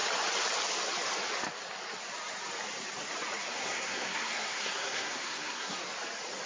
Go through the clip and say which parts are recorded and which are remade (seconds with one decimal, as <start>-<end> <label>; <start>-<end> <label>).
0.0-3.5 recorded; 3.5-5.8 remade; 5.8-6.5 recorded

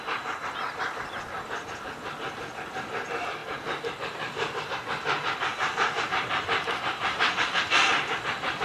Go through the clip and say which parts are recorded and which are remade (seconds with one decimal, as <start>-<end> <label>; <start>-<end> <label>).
0.0-5.5 recorded; 5.5-7.2 remade; 7.2-8.6 recorded

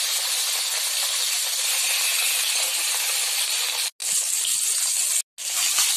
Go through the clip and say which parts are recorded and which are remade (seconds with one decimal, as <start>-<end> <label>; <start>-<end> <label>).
0.0-6.0 recorded

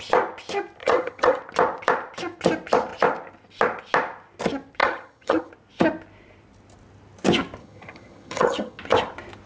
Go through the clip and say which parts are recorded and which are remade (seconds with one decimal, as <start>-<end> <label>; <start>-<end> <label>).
0.0-0.8 recorded; 0.8-1.4 remade; 1.4-4.8 recorded; 4.8-5.5 remade; 5.5-7.6 recorded; 7.6-8.8 remade; 8.8-9.5 recorded

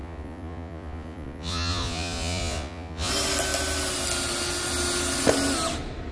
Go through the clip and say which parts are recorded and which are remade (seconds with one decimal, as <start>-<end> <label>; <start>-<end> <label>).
0.0-3.1 remade; 3.1-6.1 recorded

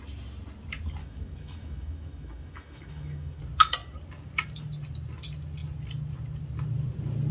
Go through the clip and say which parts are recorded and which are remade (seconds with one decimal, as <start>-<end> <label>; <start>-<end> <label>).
0.0-1.0 recorded; 1.0-3.4 remade; 3.4-7.3 recorded

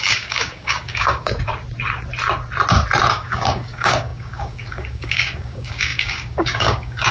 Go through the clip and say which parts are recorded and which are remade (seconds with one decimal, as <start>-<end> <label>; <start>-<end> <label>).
0.0-1.5 remade; 1.5-3.1 recorded; 3.1-7.1 remade